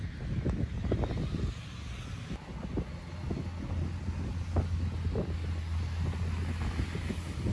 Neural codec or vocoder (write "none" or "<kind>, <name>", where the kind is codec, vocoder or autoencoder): none